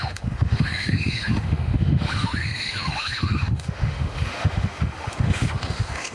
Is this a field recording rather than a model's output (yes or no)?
no